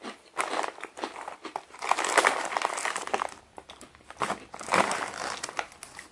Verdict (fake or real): real